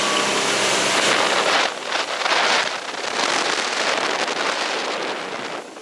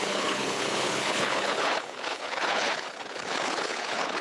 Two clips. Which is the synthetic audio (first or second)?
second